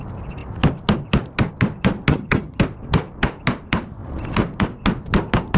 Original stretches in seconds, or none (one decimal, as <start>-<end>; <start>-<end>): 0.0-2.1; 2.6-5.6